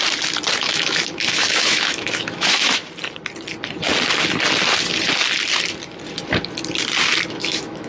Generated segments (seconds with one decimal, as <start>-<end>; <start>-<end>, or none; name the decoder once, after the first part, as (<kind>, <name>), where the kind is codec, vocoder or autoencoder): 0.6-2.8 (autoencoder, DAC-VAE); 7.3-7.9